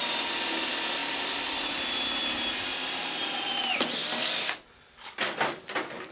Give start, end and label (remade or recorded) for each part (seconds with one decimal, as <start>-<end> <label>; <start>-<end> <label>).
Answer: 0.0-1.0 recorded; 1.0-1.7 remade; 1.7-6.1 recorded